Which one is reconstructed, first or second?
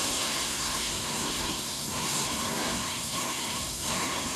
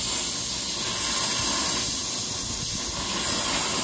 first